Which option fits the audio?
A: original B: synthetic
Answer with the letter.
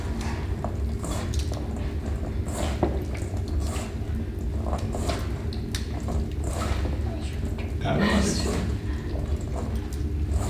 A